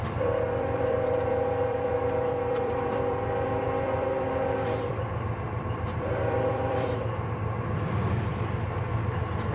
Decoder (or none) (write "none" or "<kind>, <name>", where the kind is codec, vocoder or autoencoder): vocoder, BigVGAN v2